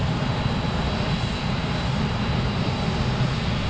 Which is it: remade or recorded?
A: recorded